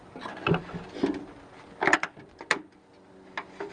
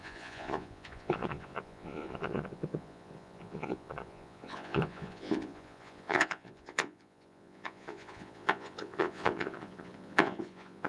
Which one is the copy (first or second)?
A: second